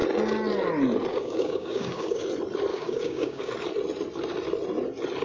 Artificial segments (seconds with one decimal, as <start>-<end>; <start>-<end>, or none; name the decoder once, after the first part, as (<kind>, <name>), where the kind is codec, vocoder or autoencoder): 1.1-2.2 (codec, DAC); 2.7-3.5